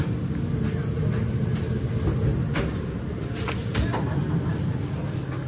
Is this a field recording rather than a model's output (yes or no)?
yes